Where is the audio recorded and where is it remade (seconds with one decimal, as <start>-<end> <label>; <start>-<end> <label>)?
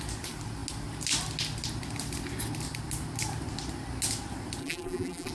0.0-4.6 recorded; 4.6-5.3 remade